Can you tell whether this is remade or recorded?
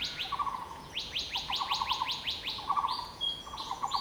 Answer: remade